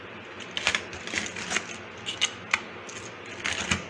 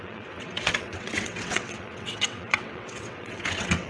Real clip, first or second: first